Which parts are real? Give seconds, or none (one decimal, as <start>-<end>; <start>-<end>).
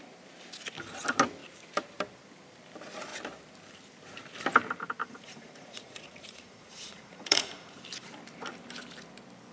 0.0-5.0; 7.8-9.5